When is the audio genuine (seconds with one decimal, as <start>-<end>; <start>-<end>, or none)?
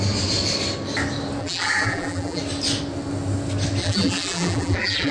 0.0-1.4; 2.4-3.8